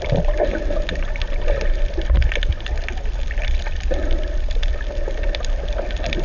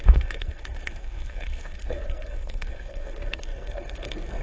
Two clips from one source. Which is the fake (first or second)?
second